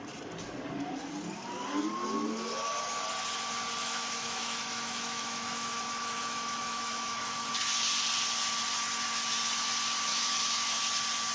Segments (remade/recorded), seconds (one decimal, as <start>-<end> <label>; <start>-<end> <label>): 0.0-3.8 recorded; 3.8-7.5 remade; 7.5-10.1 recorded; 10.1-10.8 remade; 10.8-11.3 recorded